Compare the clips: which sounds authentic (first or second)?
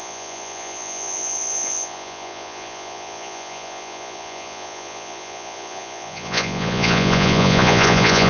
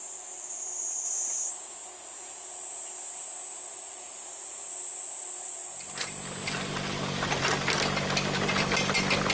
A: second